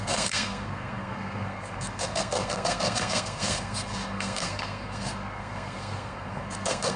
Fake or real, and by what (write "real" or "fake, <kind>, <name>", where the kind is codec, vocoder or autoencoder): fake, codec, SNAC